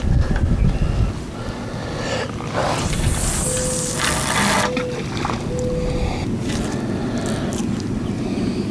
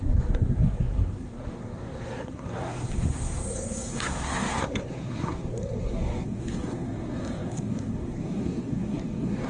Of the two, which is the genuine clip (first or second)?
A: first